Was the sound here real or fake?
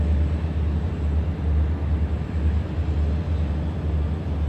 real